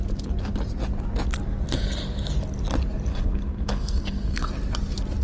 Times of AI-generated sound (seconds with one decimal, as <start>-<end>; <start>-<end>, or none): 3.1-4.5